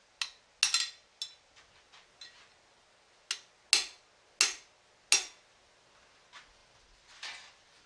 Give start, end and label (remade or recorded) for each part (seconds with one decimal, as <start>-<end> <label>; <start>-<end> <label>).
0.0-6.6 recorded; 6.6-7.9 remade